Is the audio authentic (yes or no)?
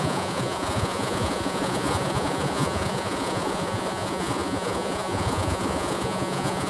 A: no